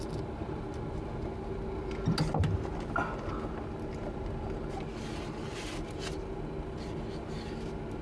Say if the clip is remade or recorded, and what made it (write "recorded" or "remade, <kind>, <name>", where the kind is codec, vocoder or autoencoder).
recorded